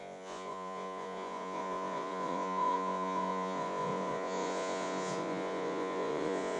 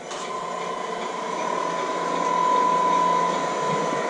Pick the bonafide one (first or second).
second